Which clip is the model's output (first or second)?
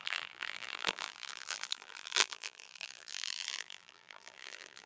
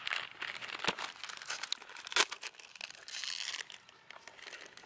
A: first